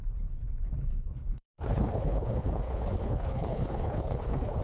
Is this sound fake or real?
fake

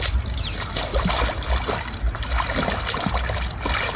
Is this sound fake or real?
real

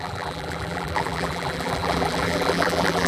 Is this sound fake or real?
fake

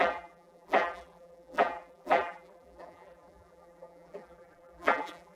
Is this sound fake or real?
fake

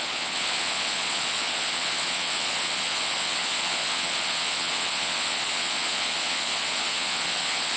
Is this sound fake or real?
fake